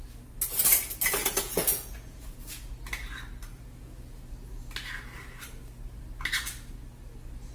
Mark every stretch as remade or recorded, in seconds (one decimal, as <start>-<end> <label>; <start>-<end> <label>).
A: 0.0-1.2 recorded; 1.2-1.9 remade; 1.9-3.5 recorded; 3.5-4.2 remade; 4.2-7.5 recorded